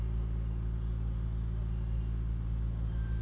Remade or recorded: recorded